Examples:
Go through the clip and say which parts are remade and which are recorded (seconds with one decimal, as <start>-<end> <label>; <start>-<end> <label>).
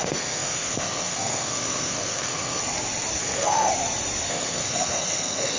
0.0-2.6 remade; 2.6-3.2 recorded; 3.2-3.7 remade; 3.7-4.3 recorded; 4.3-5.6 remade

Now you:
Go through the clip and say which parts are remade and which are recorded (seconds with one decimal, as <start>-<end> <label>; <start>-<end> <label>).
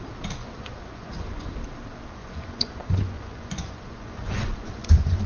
0.0-0.4 recorded; 0.4-1.5 remade; 1.5-2.2 recorded; 2.2-5.3 remade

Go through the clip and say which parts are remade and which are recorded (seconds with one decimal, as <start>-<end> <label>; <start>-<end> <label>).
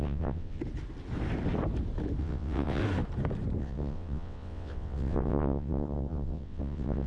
0.0-0.6 remade; 0.6-2.2 recorded; 2.2-2.8 remade; 2.8-3.6 recorded; 3.6-7.1 remade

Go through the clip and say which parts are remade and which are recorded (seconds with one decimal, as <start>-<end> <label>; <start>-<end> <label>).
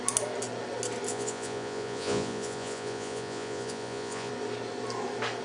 0.0-1.1 recorded; 1.1-4.3 remade; 4.3-5.4 recorded